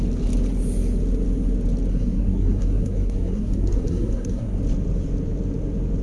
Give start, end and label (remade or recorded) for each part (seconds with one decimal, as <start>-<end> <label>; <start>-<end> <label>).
0.0-1.9 recorded; 1.9-4.6 remade; 4.6-6.0 recorded